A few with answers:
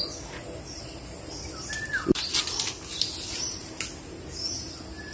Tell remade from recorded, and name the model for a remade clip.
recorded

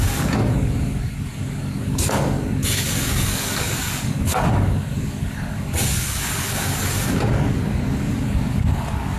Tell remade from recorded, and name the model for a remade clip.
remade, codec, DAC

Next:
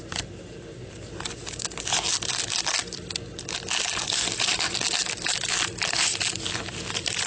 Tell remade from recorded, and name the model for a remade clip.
recorded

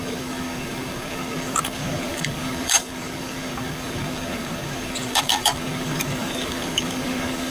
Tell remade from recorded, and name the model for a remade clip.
remade, codec, DAC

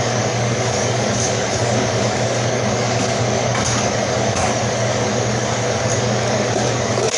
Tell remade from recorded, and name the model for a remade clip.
remade, codec, DAC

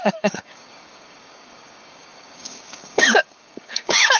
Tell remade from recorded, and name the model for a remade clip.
remade, codec, DAC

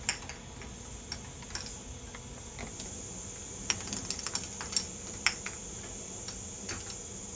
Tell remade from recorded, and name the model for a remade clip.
recorded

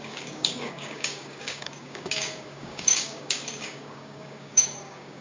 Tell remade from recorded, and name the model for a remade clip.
remade, codec, DAC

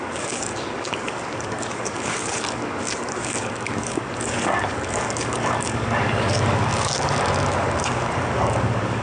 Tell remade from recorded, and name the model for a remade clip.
remade, codec, DAC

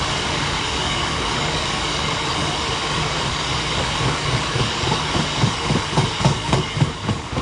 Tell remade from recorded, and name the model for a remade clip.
remade, codec, DAC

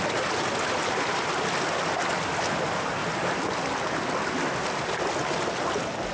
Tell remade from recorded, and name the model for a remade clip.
recorded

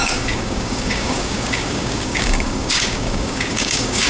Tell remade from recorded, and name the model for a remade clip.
remade, codec, DAC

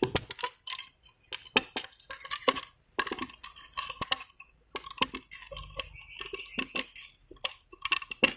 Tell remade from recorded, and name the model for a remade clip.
recorded